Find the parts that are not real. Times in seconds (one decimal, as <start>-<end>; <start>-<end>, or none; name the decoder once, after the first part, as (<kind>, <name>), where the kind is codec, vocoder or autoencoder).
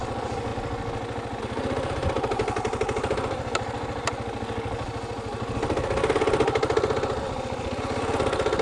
none